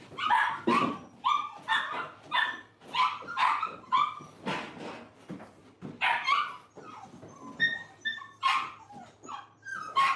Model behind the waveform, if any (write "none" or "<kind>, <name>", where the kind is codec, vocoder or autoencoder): none